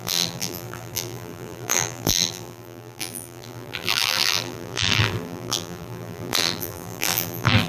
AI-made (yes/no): yes